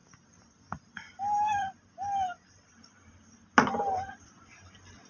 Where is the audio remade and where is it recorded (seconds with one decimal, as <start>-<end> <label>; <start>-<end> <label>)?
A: 0.0-5.1 recorded

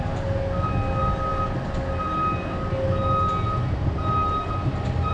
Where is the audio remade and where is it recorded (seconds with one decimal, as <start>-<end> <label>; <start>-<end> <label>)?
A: 0.0-5.1 recorded